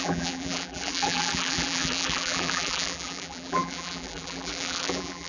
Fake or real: fake